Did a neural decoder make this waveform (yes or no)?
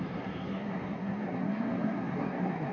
yes